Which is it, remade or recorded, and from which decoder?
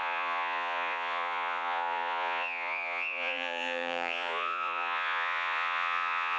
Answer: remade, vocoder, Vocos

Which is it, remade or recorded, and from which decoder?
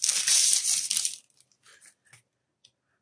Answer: recorded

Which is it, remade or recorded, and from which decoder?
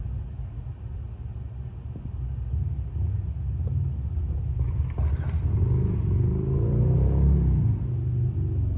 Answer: recorded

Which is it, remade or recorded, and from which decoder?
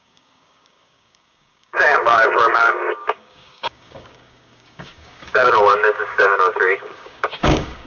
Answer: remade, codec, DAC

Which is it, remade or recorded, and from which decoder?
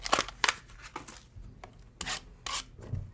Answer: recorded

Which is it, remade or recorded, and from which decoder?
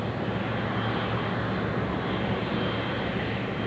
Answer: recorded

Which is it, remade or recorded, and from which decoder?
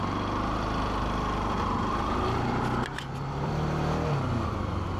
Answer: recorded